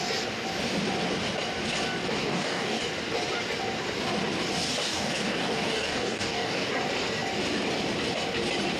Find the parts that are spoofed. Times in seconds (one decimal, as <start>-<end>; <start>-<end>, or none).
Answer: 2.2-2.8; 4.7-6.7